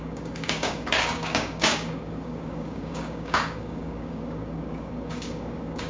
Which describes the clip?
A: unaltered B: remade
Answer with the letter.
B